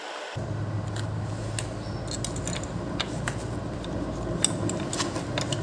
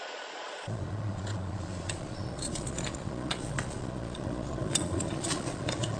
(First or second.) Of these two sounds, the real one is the first